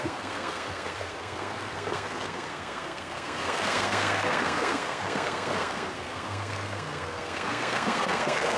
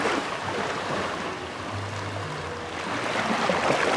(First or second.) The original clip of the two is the second